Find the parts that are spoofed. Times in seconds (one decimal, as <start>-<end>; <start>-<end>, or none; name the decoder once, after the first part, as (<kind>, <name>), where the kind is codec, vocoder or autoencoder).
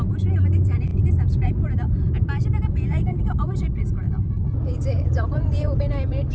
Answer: none